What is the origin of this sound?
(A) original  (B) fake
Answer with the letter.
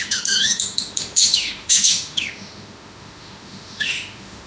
B